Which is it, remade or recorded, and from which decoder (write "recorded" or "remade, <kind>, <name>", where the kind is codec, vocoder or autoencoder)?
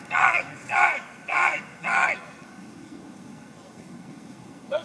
remade, codec, SNAC